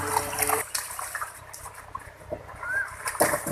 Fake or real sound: real